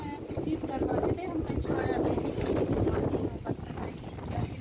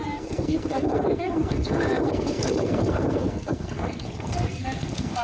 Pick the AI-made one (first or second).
second